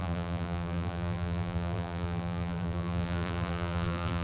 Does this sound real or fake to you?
fake